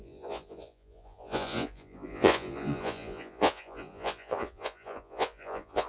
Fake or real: fake